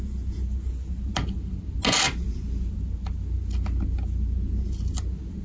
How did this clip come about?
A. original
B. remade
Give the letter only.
A